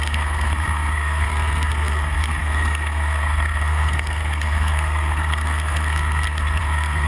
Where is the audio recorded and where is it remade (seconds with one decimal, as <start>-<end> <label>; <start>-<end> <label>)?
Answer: 0.0-7.1 remade